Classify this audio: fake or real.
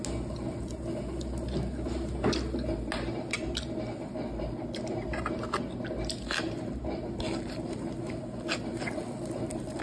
real